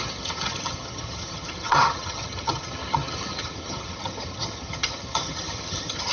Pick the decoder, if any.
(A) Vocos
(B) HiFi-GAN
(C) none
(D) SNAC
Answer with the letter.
B